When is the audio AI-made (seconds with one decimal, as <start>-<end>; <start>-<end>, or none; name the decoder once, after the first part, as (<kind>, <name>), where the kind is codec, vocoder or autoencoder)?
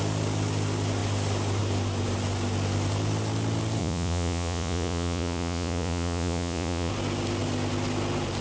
3.8-6.9 (vocoder, Vocos)